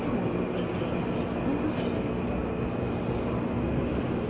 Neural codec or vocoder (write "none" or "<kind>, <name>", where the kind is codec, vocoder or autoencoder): none